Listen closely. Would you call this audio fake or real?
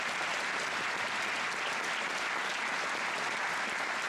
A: real